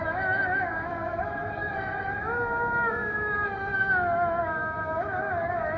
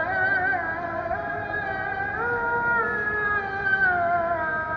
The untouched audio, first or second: second